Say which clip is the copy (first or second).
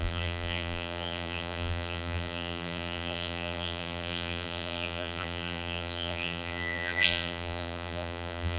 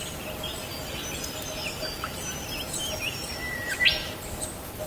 first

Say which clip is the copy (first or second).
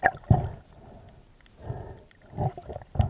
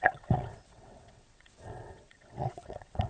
second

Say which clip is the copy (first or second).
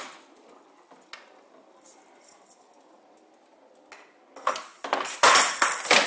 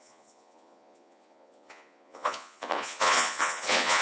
second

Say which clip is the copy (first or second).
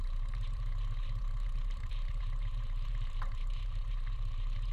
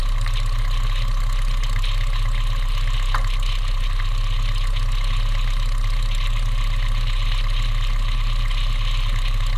first